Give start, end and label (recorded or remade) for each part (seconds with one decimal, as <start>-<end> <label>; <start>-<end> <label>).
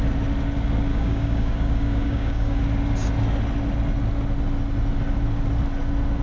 0.0-0.9 recorded; 0.9-2.6 remade; 2.6-6.2 recorded